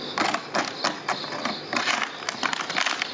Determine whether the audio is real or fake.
real